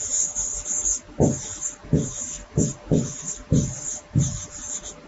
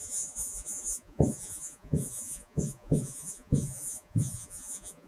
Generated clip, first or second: second